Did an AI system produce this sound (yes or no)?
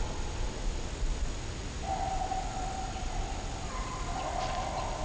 no